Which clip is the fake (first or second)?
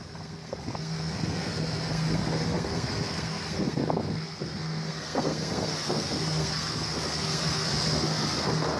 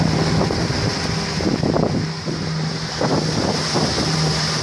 first